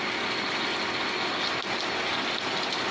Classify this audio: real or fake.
real